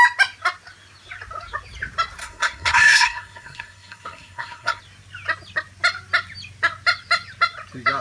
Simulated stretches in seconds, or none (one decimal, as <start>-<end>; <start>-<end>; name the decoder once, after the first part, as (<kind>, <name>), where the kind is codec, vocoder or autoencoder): 2.2-4.8 (codec, SNAC)